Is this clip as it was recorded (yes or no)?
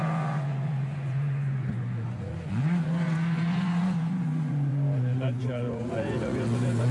no